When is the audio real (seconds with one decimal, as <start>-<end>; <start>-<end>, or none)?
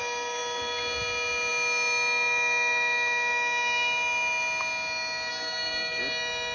0.0-5.3; 6.0-6.5